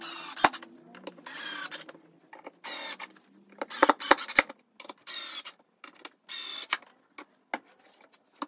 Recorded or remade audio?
recorded